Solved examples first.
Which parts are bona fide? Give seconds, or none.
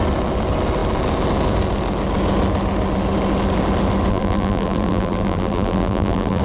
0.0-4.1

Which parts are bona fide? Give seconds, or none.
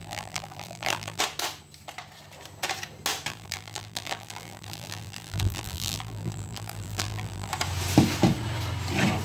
1.2-3.3; 7.5-9.2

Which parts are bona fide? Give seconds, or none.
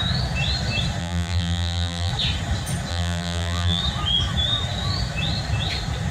0.0-1.0; 2.1-2.9; 3.8-6.1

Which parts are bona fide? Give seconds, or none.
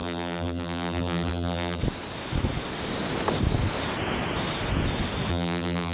1.8-5.3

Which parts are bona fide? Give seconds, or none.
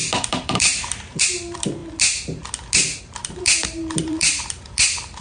1.8-3.0